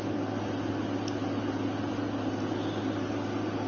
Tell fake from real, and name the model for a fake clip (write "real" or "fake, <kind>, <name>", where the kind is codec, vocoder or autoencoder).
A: real